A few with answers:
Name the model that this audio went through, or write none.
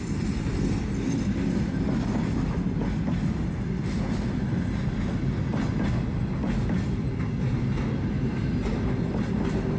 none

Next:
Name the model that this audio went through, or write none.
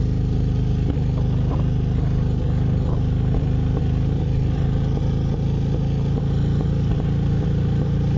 none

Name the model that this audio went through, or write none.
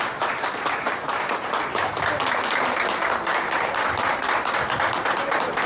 none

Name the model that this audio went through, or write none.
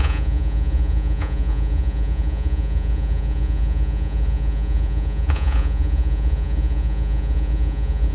vocoder, Vocos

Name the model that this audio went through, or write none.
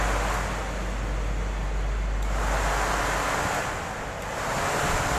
none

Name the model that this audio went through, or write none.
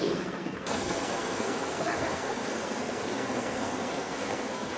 codec, SNAC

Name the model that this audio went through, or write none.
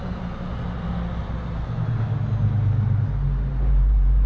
none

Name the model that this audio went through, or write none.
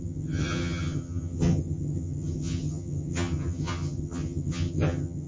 vocoder, HiFi-GAN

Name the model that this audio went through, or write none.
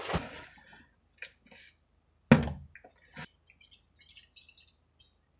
none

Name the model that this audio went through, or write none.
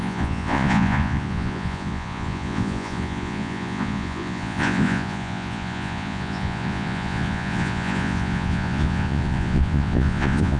vocoder, Vocos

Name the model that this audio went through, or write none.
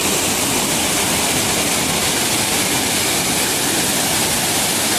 none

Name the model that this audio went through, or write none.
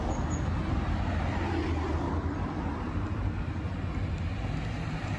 none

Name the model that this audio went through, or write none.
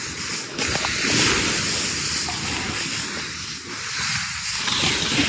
none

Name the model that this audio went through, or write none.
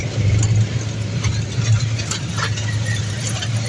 none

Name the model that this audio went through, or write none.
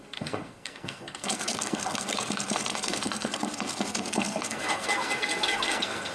codec, SNAC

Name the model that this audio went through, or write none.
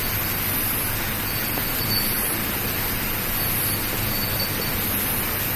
none